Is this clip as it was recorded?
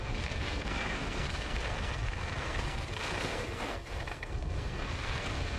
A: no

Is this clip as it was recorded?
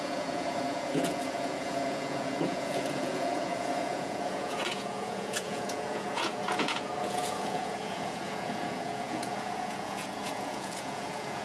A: no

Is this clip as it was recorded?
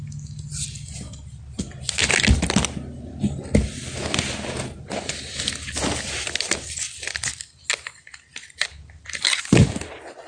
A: yes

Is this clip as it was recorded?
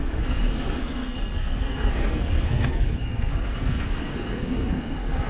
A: no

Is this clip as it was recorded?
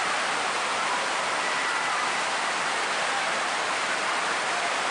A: yes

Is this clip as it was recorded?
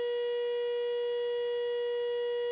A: yes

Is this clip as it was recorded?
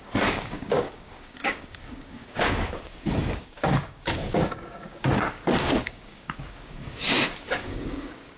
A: no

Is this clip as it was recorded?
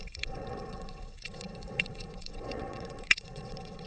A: no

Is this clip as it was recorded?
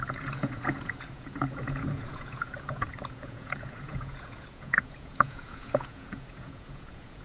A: no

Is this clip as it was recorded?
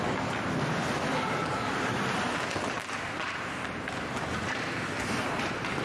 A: yes